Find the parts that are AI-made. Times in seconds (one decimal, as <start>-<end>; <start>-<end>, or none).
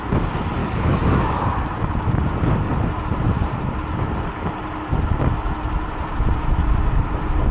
0.6-1.2